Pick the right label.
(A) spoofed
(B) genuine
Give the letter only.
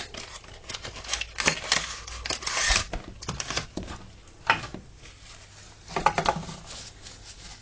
B